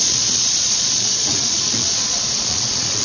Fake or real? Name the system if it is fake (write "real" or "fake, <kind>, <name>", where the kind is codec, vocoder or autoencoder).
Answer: fake, vocoder, Vocos